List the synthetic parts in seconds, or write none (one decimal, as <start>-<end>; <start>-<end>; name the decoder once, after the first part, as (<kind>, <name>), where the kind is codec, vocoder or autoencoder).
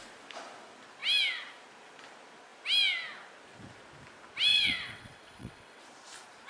4.5-5.8 (vocoder, WaveNeXt)